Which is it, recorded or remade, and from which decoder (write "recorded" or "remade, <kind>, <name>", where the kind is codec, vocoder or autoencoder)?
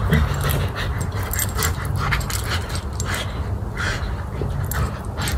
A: recorded